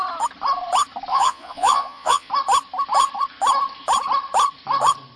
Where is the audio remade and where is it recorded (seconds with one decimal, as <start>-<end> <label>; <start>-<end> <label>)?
0.0-1.1 recorded; 1.1-2.3 remade; 2.3-5.2 recorded